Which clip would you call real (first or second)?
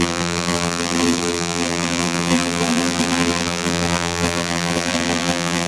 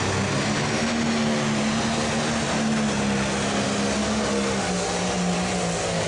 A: second